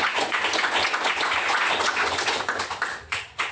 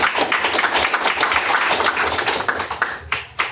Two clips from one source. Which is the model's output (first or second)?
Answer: first